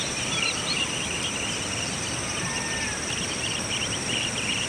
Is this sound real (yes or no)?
no